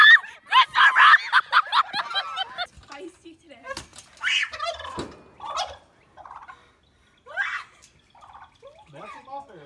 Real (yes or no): yes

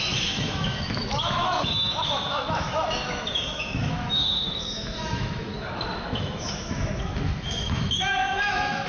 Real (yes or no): no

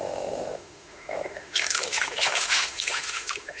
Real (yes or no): no